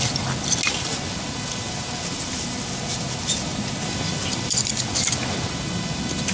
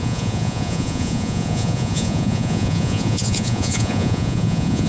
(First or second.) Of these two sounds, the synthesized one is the second